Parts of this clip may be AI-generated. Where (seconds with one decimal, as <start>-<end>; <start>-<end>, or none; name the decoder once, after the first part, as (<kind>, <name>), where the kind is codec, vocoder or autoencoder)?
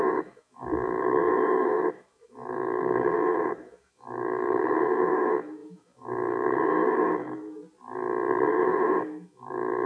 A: 0.0-7.6 (autoencoder, DAC-VAE); 8.5-9.9